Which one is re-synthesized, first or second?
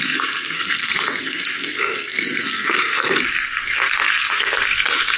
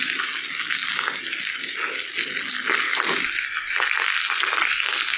first